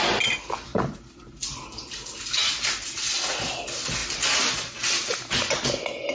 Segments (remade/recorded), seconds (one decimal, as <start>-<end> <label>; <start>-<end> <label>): 0.0-6.1 recorded

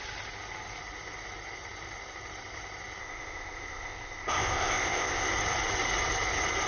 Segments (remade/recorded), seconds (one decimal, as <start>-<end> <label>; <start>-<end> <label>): 0.0-3.0 recorded; 3.0-5.3 remade; 5.3-6.7 recorded

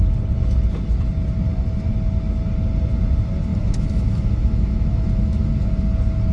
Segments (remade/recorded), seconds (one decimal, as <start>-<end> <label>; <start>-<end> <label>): 0.0-3.5 recorded; 3.5-5.7 remade; 5.7-6.3 recorded

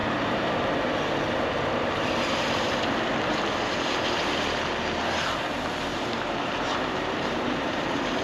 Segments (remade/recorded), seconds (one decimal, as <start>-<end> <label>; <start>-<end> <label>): 0.0-2.8 remade; 2.8-5.9 recorded; 5.9-8.2 remade

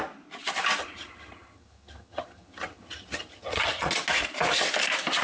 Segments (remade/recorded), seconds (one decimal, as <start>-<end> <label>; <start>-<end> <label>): 0.0-0.8 recorded; 0.8-3.9 remade; 3.9-5.2 recorded

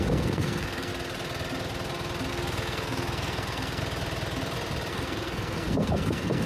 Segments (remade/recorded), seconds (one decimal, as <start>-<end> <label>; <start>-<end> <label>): 0.0-0.9 remade; 0.9-2.3 recorded; 2.3-3.8 remade; 3.8-4.9 recorded; 4.9-6.5 remade

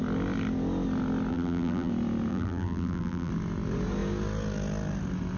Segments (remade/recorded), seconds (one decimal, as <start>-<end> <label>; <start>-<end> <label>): 0.0-1.3 recorded; 1.3-1.9 remade; 1.9-2.3 recorded; 2.3-3.3 remade; 3.3-5.4 recorded

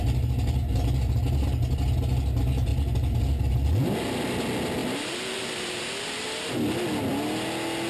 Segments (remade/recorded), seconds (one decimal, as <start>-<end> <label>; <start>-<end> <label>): 0.0-4.8 recorded; 4.8-5.8 remade; 5.8-7.9 recorded